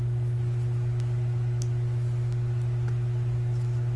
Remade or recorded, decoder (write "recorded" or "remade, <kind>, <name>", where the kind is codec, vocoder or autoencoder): recorded